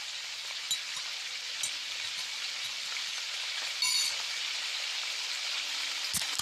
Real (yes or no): yes